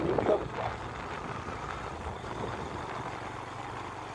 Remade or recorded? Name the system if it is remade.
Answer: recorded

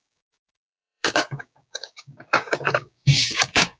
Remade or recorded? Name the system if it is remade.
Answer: remade, codec, DAC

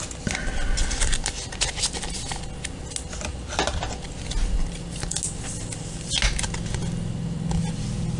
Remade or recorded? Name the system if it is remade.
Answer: recorded